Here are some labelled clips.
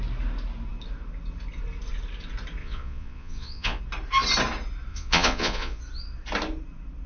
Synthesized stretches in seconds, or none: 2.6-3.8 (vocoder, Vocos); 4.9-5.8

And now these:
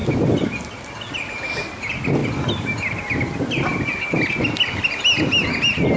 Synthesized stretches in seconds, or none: none